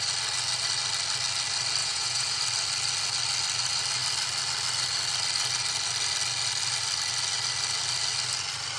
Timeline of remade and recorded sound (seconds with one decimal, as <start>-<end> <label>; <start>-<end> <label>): 0.0-1.8 recorded; 1.8-2.4 remade; 2.4-8.8 recorded